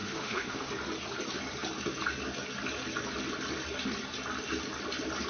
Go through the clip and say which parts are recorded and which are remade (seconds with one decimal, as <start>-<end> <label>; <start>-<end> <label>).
0.0-0.7 remade; 0.7-5.3 recorded